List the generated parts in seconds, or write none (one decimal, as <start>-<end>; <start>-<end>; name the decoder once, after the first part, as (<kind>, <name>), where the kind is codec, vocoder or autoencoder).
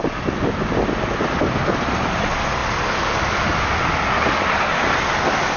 none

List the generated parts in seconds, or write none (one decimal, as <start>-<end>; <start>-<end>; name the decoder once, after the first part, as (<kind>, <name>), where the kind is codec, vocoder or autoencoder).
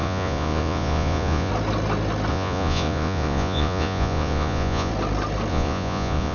0.0-1.5 (vocoder, Vocos); 2.3-4.9; 5.5-6.3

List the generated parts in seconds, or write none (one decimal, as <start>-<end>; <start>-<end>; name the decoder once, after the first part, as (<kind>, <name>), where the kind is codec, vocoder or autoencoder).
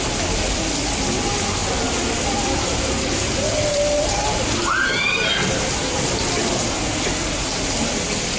none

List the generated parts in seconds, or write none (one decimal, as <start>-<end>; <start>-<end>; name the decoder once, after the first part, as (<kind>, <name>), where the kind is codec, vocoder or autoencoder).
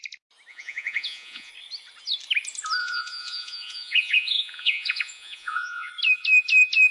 0.5-1.5 (vocoder, Vocos); 2.8-5.9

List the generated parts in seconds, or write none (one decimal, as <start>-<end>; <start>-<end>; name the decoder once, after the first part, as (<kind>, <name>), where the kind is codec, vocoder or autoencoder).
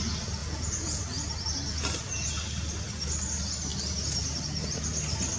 0.4-1.0 (vocoder, Vocos)